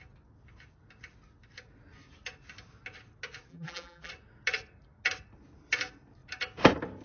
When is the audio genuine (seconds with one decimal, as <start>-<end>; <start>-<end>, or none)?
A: 0.0-3.5; 4.1-7.0